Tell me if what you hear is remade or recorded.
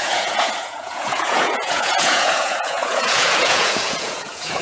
remade